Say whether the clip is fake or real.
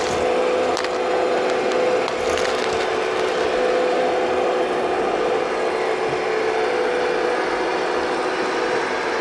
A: real